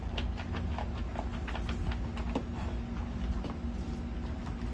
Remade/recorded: recorded